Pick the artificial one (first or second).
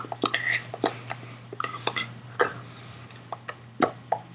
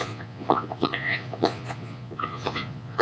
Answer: second